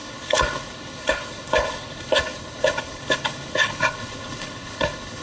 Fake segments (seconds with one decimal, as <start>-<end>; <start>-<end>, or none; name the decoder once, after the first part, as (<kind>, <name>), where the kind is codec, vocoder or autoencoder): 0.0-5.2 (codec, HILCodec)